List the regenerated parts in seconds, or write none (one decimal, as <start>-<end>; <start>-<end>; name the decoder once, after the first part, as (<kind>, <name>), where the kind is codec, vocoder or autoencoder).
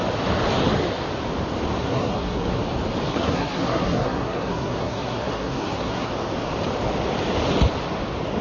1.8-2.6 (codec, SNAC); 3.1-6.1